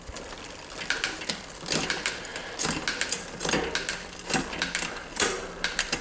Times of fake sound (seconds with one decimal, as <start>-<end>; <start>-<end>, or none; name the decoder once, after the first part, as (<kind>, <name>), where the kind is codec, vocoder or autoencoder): none